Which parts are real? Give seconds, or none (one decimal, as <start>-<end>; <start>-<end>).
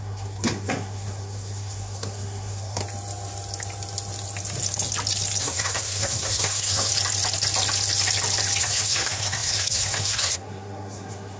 2.8-5.4; 6.9-8.6